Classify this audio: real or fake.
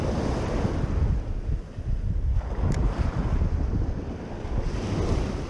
real